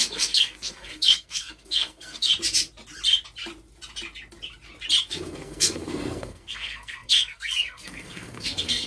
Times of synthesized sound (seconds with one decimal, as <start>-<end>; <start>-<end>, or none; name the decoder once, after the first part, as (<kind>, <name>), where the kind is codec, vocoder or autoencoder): 0.0-2.3 (codec, SNAC); 5.0-8.9